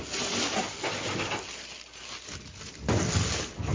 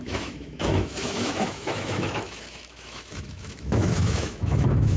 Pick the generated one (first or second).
second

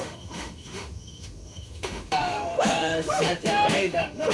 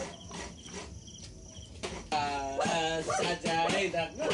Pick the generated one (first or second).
first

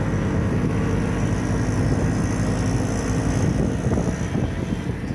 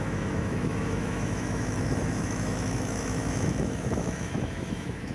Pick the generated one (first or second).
second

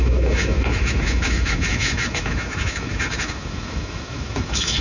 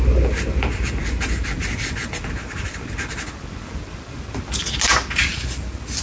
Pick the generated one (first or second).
first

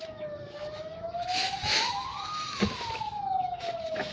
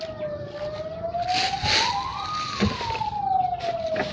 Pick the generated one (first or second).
first